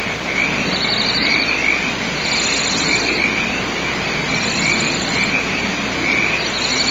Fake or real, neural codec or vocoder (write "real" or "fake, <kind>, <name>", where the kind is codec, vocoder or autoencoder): real